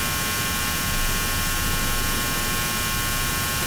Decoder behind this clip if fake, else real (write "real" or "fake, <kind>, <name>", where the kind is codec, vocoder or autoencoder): real